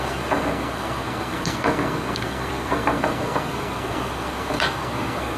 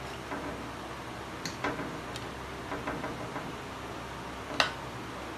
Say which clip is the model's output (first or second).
first